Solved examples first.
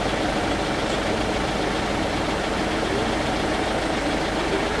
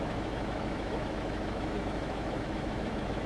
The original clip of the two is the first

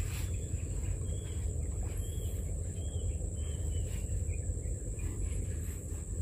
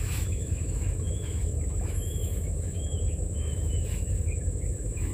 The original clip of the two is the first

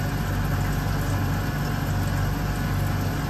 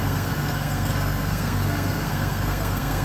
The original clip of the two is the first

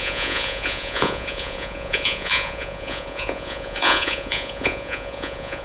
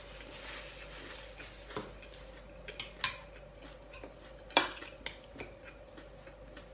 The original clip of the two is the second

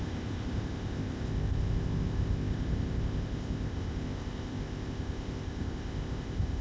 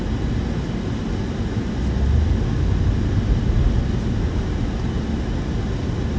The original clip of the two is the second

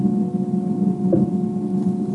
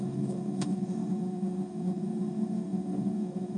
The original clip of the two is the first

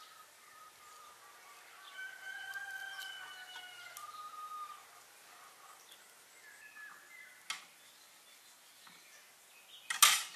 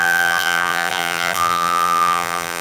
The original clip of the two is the first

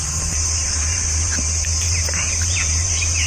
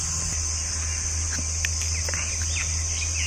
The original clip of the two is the second